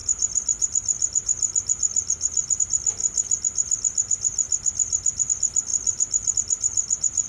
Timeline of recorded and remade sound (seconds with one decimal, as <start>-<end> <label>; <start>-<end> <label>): 0.0-7.3 recorded